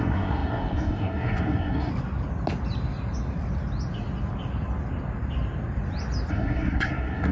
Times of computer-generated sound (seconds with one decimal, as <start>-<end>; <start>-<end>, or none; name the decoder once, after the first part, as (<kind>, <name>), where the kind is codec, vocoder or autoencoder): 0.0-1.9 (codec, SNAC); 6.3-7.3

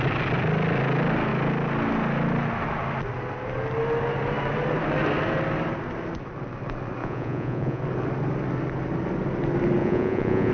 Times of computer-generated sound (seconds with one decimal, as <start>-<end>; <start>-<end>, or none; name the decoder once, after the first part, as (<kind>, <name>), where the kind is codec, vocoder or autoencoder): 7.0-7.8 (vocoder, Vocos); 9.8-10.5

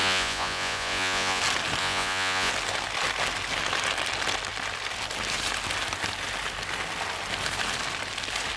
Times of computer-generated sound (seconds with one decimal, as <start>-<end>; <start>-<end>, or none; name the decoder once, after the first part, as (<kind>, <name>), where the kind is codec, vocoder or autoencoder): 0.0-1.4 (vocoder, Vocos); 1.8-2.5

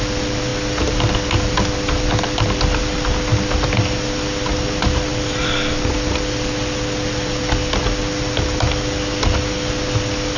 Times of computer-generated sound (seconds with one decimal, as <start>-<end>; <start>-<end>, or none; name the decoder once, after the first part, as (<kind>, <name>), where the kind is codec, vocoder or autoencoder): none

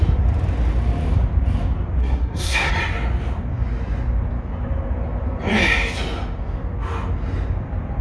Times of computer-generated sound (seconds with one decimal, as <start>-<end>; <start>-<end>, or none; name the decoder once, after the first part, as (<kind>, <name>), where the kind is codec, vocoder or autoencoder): 2.0-2.7 (codec, SNAC)

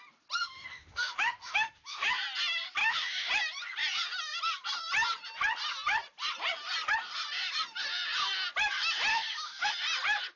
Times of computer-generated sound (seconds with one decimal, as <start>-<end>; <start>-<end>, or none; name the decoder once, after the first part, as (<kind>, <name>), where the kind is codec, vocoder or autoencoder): 0.4-2.1 (autoencoder, DAC-VAE); 2.8-3.3; 9.1-9.7